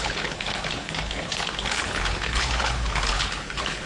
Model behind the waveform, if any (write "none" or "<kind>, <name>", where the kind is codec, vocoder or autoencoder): codec, HILCodec